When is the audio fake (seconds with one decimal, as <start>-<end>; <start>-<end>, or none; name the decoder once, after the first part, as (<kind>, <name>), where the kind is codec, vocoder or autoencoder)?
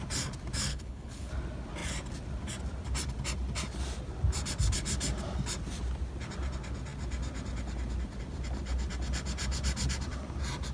0.7-1.3 (codec, HILCodec)